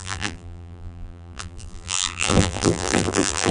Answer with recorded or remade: remade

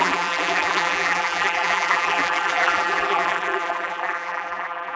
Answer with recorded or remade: remade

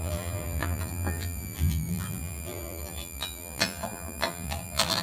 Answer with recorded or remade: remade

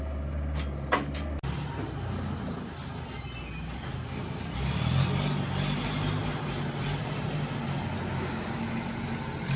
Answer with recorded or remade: recorded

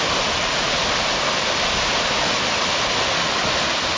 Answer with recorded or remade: recorded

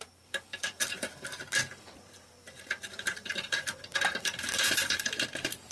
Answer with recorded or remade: remade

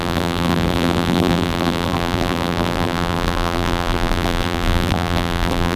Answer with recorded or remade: remade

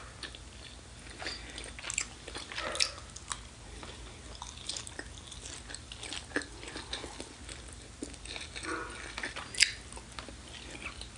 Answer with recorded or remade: recorded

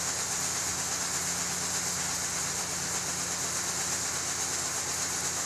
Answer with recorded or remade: recorded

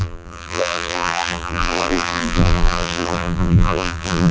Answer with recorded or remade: remade